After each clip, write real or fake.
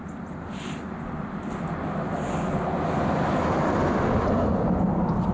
real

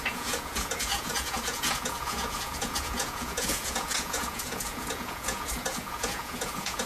fake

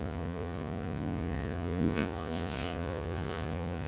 fake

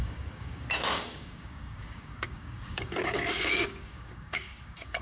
fake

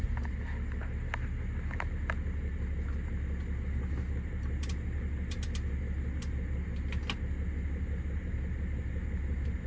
real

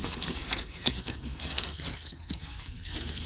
fake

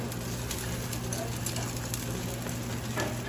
real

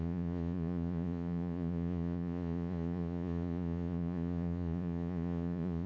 fake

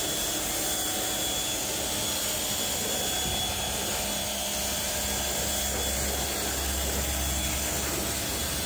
real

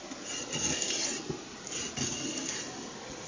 real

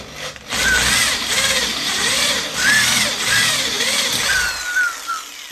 real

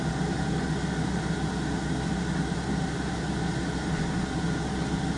real